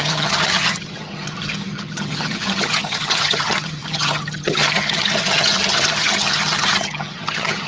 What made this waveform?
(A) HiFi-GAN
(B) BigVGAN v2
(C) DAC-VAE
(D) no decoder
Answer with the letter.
A